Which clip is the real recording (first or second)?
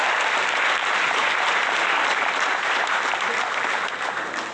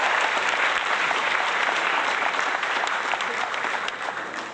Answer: first